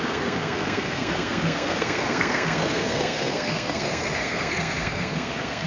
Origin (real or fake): fake